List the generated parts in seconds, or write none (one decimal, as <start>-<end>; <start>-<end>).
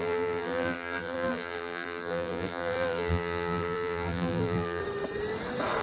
0.0-4.8